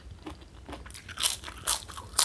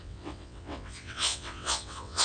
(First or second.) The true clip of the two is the first